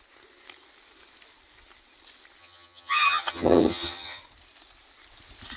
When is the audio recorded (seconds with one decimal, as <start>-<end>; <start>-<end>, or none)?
0.0-2.4; 4.2-5.6